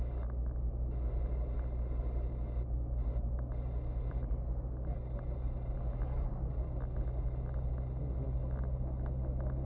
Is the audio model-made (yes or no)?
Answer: no